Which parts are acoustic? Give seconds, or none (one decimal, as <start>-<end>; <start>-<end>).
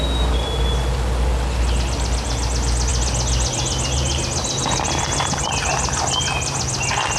0.0-7.2